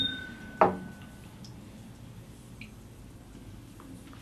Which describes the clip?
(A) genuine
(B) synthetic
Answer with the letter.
A